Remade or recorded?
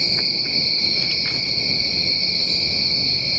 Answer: recorded